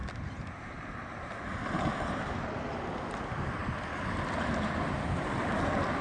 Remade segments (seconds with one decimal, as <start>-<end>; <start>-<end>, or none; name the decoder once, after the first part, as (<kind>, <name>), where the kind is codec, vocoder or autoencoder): 0.0-3.2 (vocoder, BigVGAN v2)